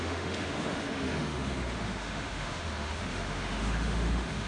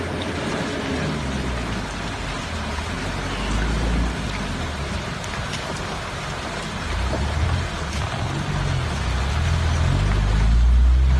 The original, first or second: second